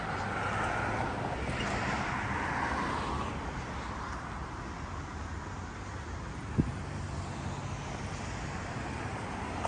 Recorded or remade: recorded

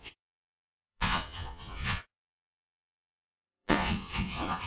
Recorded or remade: remade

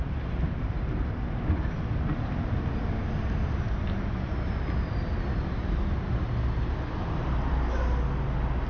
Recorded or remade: recorded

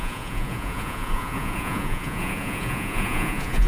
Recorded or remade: remade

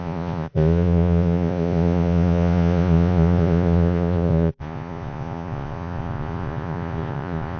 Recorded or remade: remade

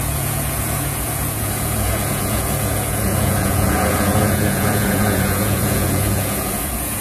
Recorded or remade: remade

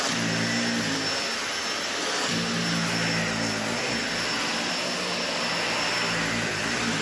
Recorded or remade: recorded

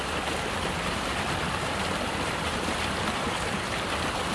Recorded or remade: recorded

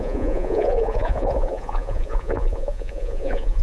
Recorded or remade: remade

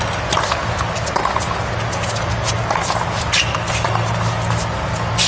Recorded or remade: recorded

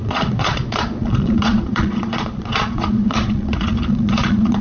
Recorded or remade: remade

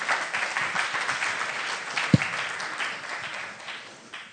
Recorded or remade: recorded